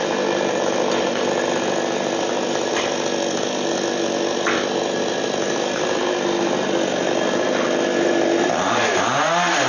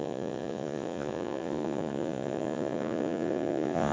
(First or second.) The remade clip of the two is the second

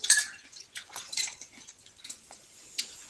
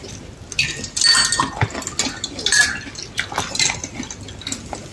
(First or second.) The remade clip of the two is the first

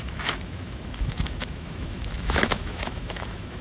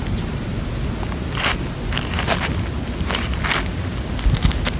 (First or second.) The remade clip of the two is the first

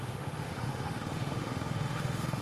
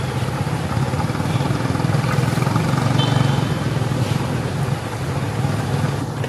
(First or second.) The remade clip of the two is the first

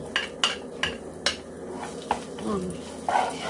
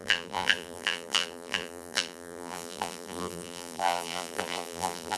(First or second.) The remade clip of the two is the second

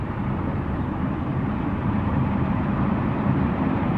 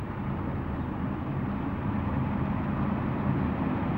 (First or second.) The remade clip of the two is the first